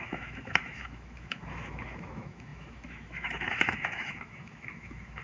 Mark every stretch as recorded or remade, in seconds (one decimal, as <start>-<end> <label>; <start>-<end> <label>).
0.0-5.2 remade

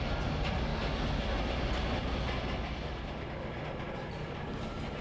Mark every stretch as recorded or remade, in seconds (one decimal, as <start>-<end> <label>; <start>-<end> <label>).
0.0-0.7 remade; 0.7-3.7 recorded; 3.7-5.0 remade

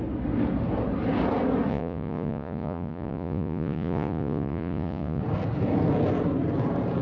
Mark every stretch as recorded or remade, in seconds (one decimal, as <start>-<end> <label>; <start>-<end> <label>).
0.0-1.7 recorded; 1.7-5.2 remade; 5.2-7.0 recorded

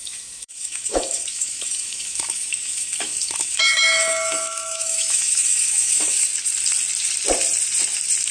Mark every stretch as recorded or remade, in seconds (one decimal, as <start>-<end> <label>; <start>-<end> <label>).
0.0-6.3 remade; 6.3-8.3 recorded

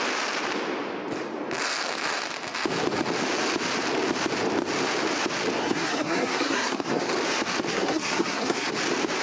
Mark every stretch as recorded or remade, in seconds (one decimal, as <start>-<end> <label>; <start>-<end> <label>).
0.0-5.6 recorded; 5.6-7.1 remade; 7.1-7.7 recorded; 7.7-8.7 remade; 8.7-9.2 recorded

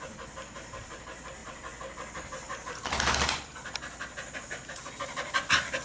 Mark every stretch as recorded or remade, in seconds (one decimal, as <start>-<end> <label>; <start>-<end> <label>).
0.0-5.8 recorded

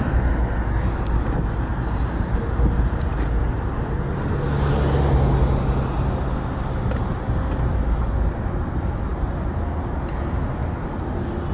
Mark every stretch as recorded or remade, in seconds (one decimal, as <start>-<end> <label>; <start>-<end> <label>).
0.0-11.5 recorded